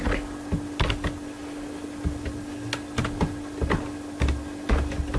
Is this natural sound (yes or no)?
yes